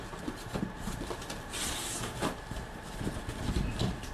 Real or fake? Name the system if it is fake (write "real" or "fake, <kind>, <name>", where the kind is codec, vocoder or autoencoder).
real